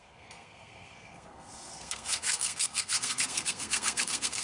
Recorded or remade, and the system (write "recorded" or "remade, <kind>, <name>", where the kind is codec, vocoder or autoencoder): remade, codec, SNAC